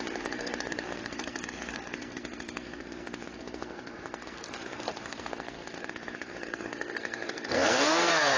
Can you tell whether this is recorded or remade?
remade